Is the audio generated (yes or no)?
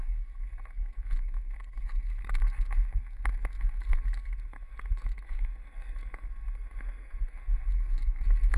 yes